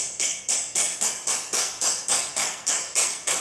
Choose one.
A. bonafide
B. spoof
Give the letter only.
B